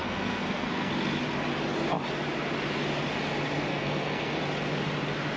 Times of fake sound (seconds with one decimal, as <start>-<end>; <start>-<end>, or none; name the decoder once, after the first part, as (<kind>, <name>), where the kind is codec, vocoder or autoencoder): 0.0-0.9 (codec, SNAC); 3.7-4.4